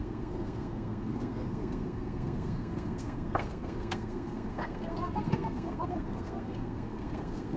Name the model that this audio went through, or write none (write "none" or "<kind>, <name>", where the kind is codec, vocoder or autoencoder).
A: codec, SNAC